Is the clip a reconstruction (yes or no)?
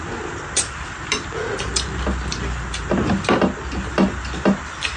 no